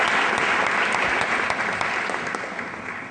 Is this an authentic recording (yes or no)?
yes